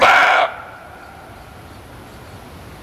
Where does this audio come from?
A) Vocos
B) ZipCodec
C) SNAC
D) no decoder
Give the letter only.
D